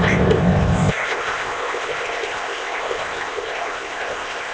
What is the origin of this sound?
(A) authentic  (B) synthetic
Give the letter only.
B